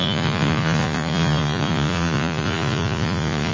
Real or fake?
fake